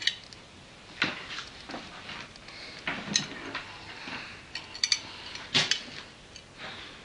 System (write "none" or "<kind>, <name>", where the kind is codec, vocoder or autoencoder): none